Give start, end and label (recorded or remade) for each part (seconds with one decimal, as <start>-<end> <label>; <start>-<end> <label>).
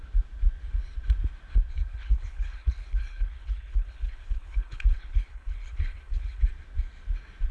0.0-1.9 recorded; 1.9-6.4 remade; 6.4-7.5 recorded